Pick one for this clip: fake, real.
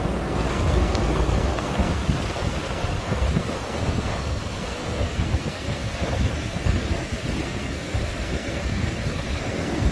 fake